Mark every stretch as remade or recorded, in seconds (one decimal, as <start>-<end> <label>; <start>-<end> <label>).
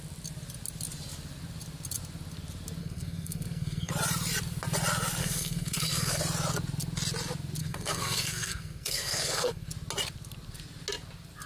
0.0-2.8 recorded; 2.8-3.9 remade; 3.9-5.2 recorded; 5.2-6.2 remade; 6.2-7.6 recorded; 7.6-9.7 remade; 9.7-11.5 recorded